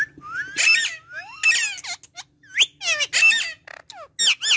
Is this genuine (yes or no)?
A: yes